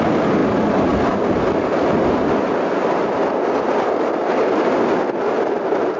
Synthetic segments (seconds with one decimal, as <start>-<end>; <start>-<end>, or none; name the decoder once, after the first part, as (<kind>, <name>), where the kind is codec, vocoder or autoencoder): none